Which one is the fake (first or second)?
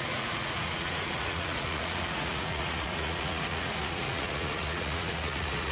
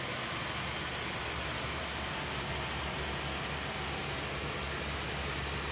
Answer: first